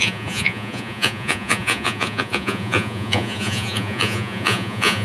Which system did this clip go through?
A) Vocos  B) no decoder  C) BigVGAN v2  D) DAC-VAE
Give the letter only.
A